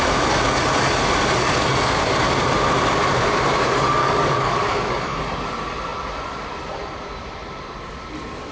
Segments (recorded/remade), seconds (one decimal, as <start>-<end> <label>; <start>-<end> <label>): 0.0-4.0 recorded; 4.0-5.2 remade; 5.2-8.5 recorded